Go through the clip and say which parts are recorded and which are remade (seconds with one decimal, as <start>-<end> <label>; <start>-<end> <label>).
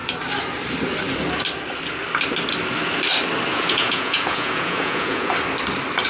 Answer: 0.0-3.5 recorded; 3.5-5.3 remade; 5.3-6.1 recorded